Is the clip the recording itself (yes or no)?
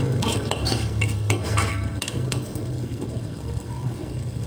no